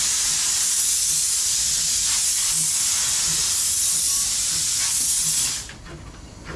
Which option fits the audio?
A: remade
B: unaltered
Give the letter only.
B